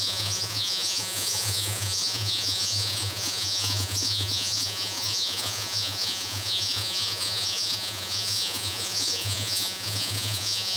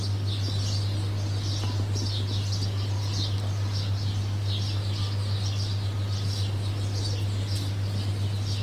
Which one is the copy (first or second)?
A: first